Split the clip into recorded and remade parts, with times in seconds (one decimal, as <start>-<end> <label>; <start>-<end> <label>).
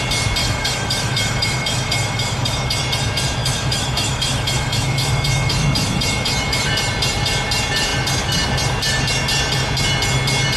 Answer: 0.0-0.4 recorded; 0.4-2.8 remade; 2.8-3.4 recorded; 3.4-6.7 remade; 6.7-10.6 recorded